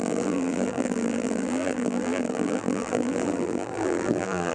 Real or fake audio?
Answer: fake